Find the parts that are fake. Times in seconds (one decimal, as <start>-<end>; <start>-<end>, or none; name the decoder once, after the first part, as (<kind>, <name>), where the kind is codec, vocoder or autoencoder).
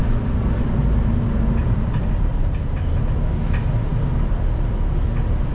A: 1.6-2.9 (vocoder, BigVGAN v2)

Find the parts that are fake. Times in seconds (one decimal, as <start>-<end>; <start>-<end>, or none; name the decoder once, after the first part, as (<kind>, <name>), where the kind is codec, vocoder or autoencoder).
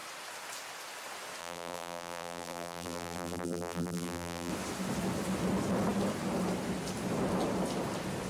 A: 1.4-4.5 (vocoder, BigVGAN v2)